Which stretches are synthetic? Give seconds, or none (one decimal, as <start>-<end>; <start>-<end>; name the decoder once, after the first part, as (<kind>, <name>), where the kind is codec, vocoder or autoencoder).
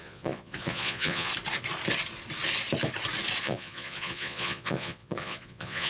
0.0-1.3 (vocoder, Vocos); 3.4-5.9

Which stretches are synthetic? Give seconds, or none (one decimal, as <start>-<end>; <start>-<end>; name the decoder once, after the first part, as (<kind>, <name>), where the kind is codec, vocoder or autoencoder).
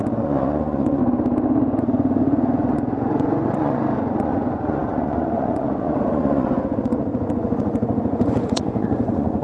0.0-1.0 (vocoder, Vocos); 1.8-9.4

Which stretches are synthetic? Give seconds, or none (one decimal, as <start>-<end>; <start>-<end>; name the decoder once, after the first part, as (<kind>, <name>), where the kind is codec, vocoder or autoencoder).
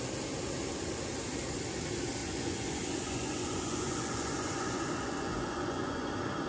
2.2-6.1 (vocoder, Vocos)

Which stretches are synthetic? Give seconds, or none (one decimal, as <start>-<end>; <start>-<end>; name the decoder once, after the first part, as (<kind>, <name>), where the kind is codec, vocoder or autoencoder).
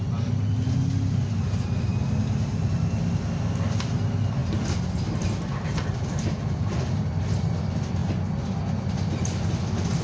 none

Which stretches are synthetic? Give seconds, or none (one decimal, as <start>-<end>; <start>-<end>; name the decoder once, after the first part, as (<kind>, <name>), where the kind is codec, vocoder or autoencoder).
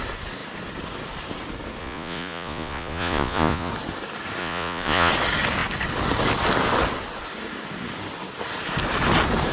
1.8-3.7 (vocoder, Vocos); 4.4-5.1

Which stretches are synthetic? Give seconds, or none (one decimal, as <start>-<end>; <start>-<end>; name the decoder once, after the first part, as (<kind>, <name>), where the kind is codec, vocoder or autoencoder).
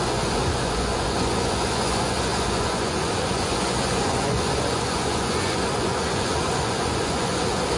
0.0-7.8 (vocoder, Vocos)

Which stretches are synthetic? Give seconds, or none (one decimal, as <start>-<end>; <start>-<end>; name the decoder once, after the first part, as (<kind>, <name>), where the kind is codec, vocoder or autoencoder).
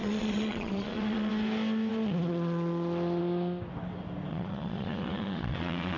0.0-1.3 (vocoder, Vocos); 4.3-6.0